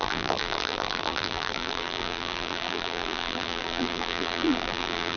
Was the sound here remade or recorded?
remade